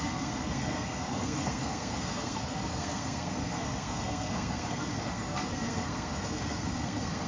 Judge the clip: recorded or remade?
remade